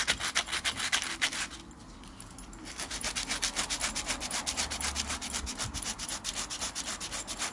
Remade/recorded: recorded